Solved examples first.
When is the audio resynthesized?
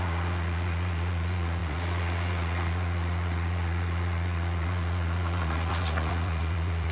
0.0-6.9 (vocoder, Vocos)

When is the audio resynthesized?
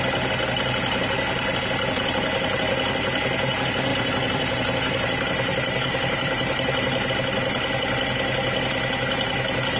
3.9-7.1 (vocoder, BigVGAN v2)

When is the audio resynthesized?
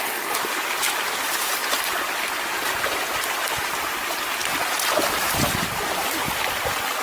none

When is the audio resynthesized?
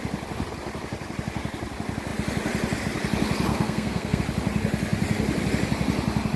3.5-4.2 (codec, SNAC)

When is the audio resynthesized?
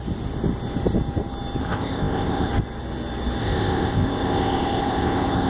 1.6-2.5 (codec, ZipCodec); 3.4-5.5